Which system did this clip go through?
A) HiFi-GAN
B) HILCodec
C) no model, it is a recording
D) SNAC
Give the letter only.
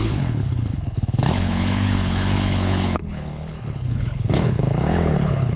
B